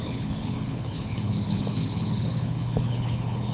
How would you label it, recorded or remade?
remade